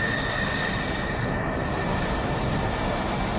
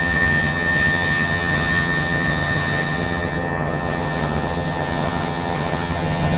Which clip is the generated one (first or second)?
second